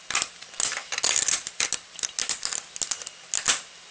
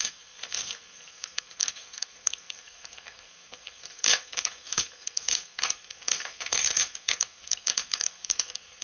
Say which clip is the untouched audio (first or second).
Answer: first